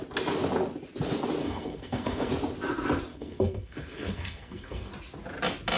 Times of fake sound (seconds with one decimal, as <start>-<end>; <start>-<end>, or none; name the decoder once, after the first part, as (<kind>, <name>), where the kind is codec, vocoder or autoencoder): 1.4-2.3 (codec, SNAC); 3.1-4.9